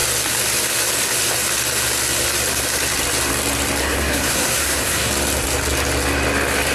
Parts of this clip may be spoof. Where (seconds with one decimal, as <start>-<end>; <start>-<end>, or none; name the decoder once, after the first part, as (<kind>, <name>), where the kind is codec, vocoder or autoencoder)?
3.8-5.1 (codec, SNAC)